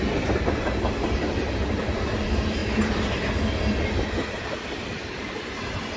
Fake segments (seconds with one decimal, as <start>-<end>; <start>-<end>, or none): 0.0-2.6; 4.3-6.0